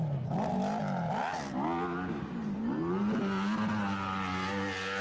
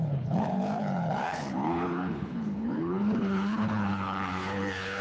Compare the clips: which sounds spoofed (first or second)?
second